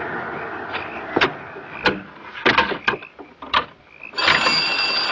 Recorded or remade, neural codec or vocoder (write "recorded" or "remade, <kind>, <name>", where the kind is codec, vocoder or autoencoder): recorded